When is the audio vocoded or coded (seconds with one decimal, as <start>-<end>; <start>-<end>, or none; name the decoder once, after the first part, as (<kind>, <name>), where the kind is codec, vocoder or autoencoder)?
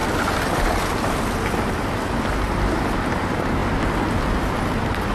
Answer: 2.7-3.6 (vocoder, BigVGAN v2)